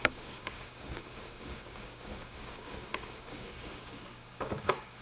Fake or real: fake